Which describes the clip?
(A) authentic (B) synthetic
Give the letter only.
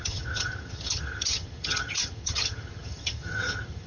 B